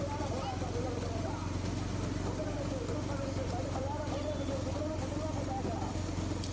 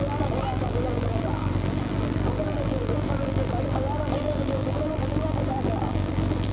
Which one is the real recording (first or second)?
first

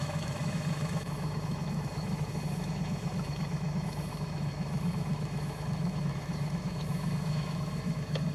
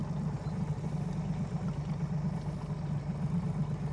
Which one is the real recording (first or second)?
second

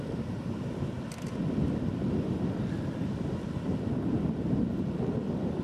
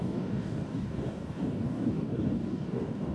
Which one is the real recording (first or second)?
first